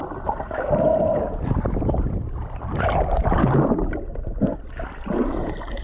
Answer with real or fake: real